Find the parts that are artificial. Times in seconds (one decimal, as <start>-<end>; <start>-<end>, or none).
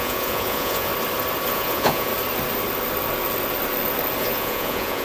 0.0-0.9; 1.5-2.1; 4.2-5.0